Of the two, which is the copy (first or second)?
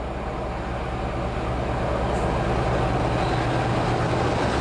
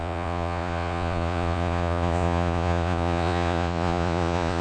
second